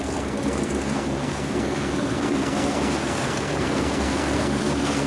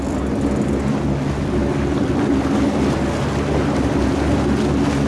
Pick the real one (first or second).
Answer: second